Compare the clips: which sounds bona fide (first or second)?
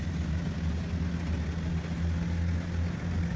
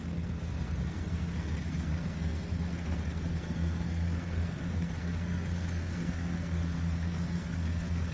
first